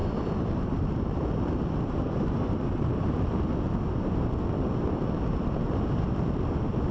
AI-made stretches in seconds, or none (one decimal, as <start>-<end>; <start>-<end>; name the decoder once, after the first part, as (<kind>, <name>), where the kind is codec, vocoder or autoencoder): 0.0-2.8 (vocoder, BigVGAN v2)